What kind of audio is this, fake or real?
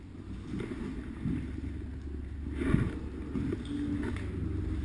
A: real